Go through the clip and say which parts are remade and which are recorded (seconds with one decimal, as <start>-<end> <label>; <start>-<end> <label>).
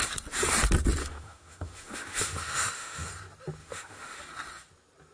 0.0-1.0 recorded; 1.0-3.1 remade; 3.1-3.6 recorded; 3.6-4.2 remade; 4.2-5.1 recorded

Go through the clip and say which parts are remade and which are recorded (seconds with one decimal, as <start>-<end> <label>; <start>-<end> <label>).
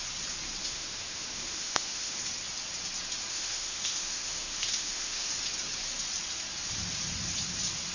0.0-0.6 recorded; 0.6-2.2 remade; 2.2-3.3 recorded; 3.3-5.3 remade; 5.3-7.9 recorded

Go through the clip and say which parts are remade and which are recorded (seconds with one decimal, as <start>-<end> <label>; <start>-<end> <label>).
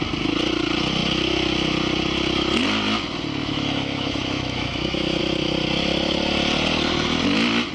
0.0-3.4 recorded; 3.4-5.2 remade; 5.2-7.7 recorded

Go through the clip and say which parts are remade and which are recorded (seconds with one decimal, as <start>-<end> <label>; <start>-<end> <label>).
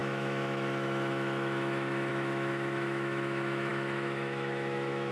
0.0-5.1 remade